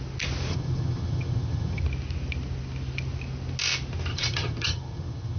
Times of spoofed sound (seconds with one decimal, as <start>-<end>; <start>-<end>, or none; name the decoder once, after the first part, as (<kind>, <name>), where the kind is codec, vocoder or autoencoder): 0.5-1.8 (vocoder, HiFi-GAN); 4.1-5.4